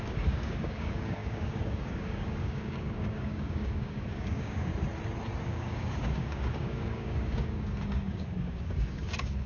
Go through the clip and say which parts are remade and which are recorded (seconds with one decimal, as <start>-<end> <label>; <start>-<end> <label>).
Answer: 0.0-4.7 remade; 4.7-5.4 recorded; 5.4-9.5 remade